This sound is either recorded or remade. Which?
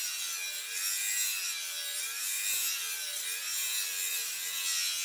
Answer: recorded